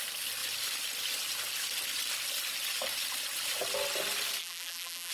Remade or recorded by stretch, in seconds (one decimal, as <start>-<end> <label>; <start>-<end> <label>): 0.0-4.4 recorded; 4.4-5.1 remade